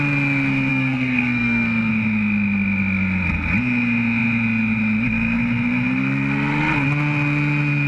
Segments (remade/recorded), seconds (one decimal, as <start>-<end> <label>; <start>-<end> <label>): 0.0-0.7 recorded; 0.7-1.9 remade; 1.9-7.9 recorded